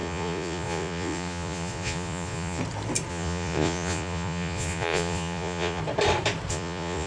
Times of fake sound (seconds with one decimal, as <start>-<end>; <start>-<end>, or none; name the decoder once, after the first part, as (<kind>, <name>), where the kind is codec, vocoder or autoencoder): 0.0-2.6 (vocoder, Vocos); 3.1-5.8; 6.5-7.1